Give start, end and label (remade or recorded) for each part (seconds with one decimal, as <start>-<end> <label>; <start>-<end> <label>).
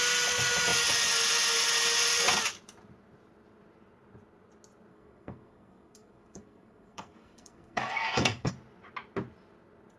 0.0-4.9 recorded; 4.9-8.5 remade; 8.5-10.0 recorded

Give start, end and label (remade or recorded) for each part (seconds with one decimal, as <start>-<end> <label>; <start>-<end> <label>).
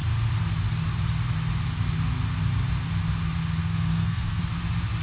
0.0-3.6 recorded; 3.6-4.4 remade; 4.4-5.0 recorded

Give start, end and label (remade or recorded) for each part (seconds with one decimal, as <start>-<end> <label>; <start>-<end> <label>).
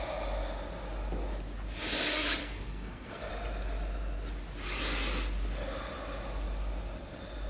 0.0-2.4 recorded; 2.4-3.3 remade; 3.3-7.5 recorded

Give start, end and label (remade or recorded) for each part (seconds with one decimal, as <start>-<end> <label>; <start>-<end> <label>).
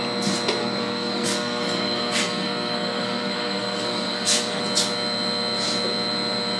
0.0-0.6 recorded; 0.6-4.6 remade; 4.6-6.6 recorded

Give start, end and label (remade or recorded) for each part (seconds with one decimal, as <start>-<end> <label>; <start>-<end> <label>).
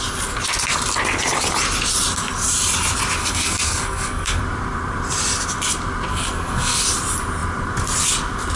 0.0-3.2 recorded; 3.2-4.4 remade; 4.4-6.1 recorded; 6.1-6.8 remade; 6.8-8.6 recorded